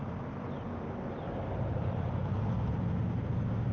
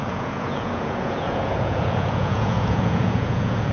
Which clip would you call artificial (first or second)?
second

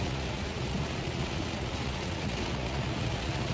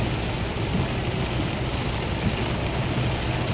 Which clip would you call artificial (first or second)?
first